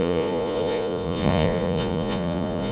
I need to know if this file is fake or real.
fake